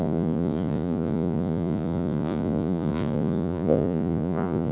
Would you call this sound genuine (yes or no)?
no